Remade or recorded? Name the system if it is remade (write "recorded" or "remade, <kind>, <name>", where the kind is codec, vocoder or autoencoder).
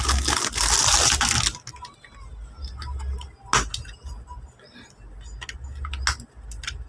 recorded